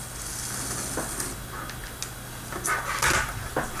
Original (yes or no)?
yes